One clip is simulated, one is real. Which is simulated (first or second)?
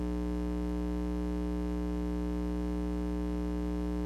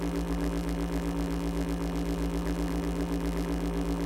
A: second